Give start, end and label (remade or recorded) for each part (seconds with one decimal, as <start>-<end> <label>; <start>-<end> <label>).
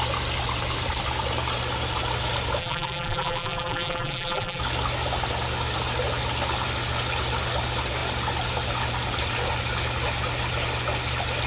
0.0-2.6 recorded; 2.6-4.6 remade; 4.6-11.5 recorded